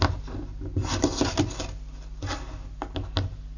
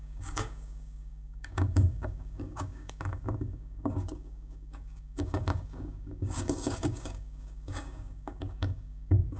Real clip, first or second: first